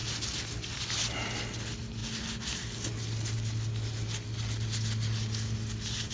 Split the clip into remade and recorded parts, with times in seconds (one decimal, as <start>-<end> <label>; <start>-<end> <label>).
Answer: 0.0-6.1 recorded